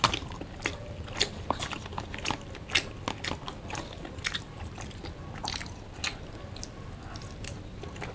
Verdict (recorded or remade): recorded